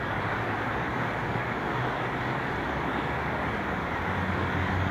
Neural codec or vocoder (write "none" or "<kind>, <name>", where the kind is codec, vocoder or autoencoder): codec, DAC